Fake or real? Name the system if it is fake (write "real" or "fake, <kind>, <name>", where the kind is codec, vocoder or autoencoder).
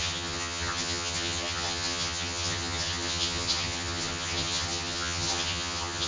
fake, vocoder, HiFi-GAN